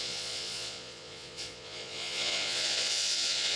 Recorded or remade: remade